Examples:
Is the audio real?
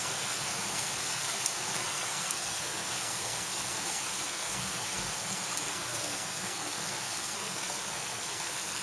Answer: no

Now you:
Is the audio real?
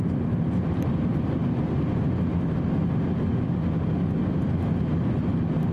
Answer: yes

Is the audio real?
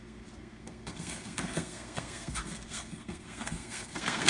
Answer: no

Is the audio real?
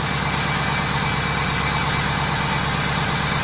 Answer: yes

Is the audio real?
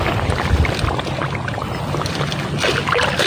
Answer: yes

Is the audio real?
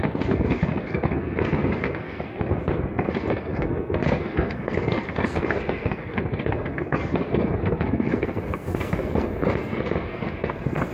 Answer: no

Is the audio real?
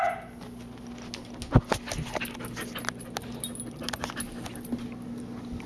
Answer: yes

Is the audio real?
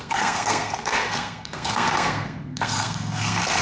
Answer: no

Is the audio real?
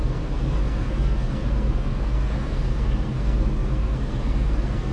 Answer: no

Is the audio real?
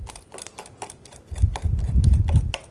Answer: yes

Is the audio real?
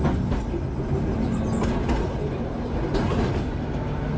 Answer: yes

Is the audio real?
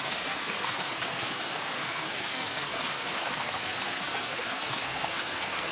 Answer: no